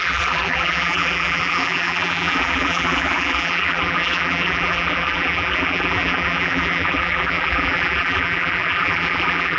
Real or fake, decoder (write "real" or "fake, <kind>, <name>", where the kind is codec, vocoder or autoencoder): fake, vocoder, BigVGAN v2